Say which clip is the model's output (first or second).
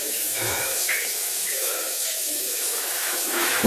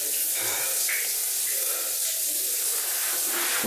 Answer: first